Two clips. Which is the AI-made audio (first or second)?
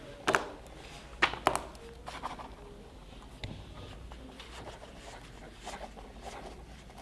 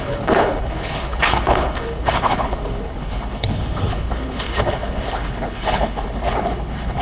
second